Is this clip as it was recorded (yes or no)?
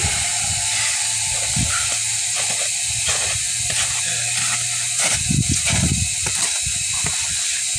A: yes